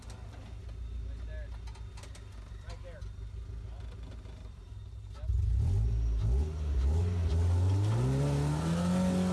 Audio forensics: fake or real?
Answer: real